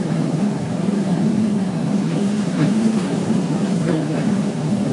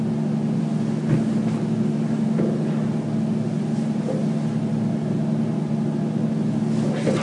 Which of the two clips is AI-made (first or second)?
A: first